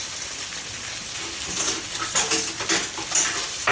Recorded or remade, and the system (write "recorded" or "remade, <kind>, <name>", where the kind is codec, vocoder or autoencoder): recorded